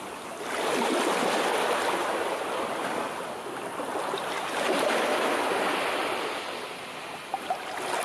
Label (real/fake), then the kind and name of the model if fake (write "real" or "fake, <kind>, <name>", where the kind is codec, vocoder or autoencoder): real